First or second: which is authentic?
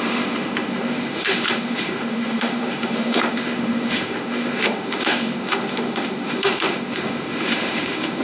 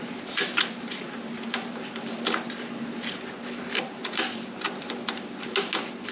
second